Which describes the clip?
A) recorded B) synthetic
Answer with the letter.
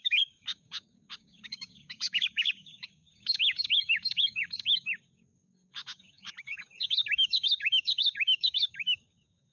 B